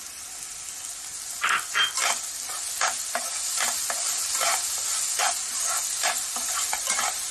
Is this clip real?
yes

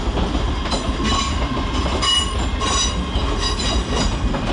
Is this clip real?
yes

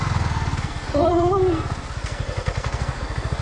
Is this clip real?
no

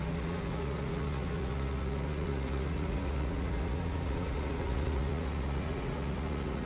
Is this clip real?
no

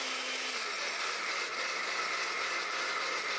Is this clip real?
yes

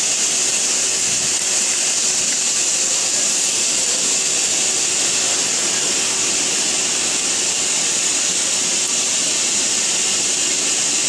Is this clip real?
yes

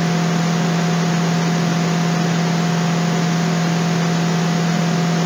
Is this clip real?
yes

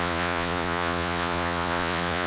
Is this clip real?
no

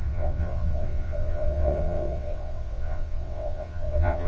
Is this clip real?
no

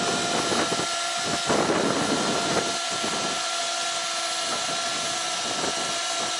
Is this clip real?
yes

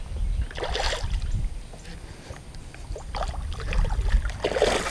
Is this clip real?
yes